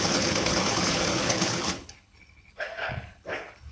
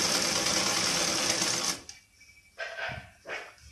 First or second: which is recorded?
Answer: second